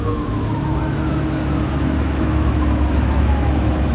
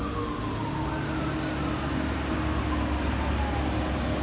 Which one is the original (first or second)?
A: second